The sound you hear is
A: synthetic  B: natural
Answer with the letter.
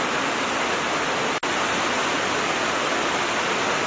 B